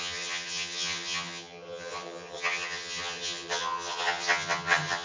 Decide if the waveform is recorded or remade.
remade